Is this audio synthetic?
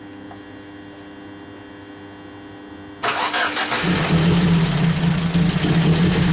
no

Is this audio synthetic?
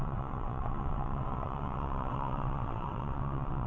yes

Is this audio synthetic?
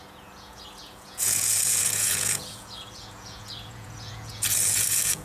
yes